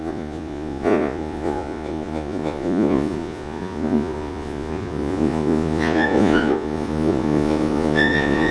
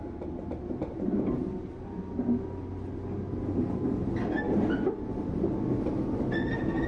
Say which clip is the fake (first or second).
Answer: first